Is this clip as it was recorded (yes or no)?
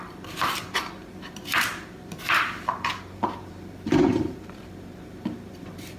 no